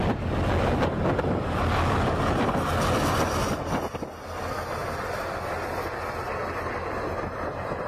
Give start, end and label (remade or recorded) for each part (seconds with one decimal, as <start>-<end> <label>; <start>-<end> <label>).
0.0-7.9 recorded